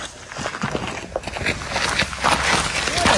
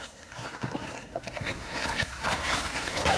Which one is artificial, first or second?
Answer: second